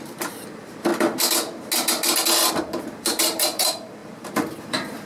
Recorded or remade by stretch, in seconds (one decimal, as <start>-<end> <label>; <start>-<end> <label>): 0.0-0.9 remade; 0.9-2.5 recorded; 2.5-5.1 remade